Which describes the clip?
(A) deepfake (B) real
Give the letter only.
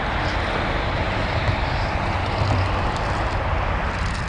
B